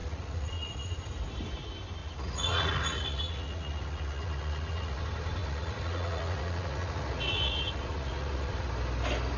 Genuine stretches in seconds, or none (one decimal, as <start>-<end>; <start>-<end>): 1.0-2.0; 5.0-5.4; 8.7-9.4